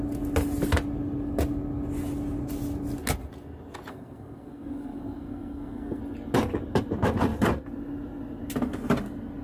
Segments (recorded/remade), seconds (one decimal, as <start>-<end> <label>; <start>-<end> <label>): 0.0-3.9 recorded; 3.9-6.0 remade; 6.0-9.4 recorded